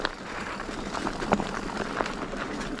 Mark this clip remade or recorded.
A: recorded